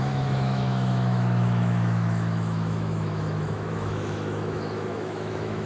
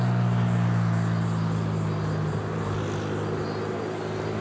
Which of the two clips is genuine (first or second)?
second